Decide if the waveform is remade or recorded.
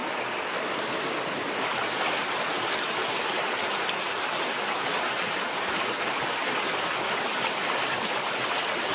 recorded